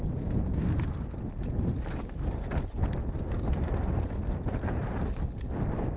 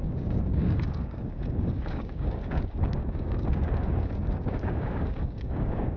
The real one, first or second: first